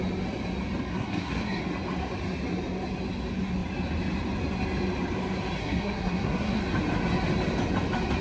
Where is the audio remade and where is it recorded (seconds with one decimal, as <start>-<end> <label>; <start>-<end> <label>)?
0.0-0.9 recorded; 0.9-1.6 remade; 1.6-5.6 recorded; 5.6-6.6 remade; 6.6-8.2 recorded